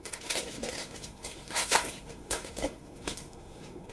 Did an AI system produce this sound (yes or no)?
yes